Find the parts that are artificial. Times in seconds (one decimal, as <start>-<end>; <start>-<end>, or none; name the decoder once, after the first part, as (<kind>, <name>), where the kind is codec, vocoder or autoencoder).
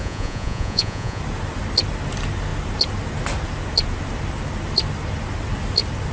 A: 0.0-1.2 (vocoder, Vocos)